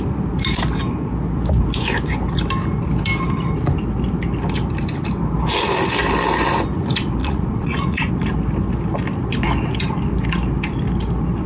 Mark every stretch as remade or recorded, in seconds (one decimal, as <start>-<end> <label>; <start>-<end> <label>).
0.0-7.2 recorded; 7.2-8.1 remade; 8.1-11.5 recorded